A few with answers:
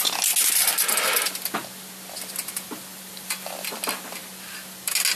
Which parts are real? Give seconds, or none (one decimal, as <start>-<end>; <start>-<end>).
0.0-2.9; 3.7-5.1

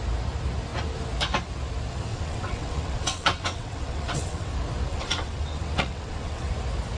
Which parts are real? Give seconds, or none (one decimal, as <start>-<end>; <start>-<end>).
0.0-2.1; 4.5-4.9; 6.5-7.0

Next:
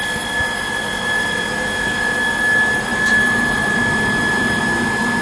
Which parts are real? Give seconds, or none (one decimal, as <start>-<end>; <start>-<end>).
0.0-2.9; 4.6-5.2

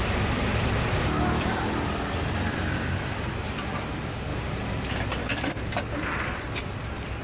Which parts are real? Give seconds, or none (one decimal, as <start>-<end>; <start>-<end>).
4.3-5.3

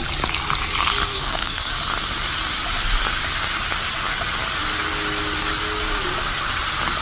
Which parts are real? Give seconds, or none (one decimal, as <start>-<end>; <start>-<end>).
0.0-1.1; 1.7-7.0

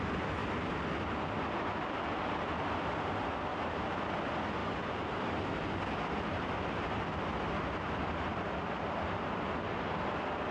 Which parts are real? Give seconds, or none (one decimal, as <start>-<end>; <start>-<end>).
0.0-3.5; 4.1-10.5

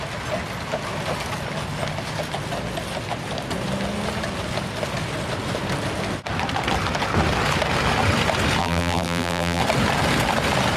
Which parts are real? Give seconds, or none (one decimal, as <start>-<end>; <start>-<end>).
0.0-8.6; 9.6-10.8